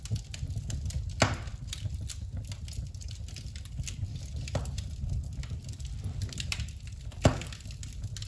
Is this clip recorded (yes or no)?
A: yes